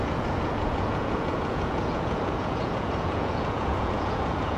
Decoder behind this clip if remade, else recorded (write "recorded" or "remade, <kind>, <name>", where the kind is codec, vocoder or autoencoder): remade, vocoder, Vocos